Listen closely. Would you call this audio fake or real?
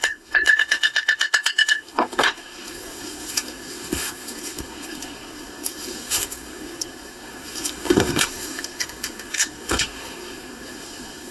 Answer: fake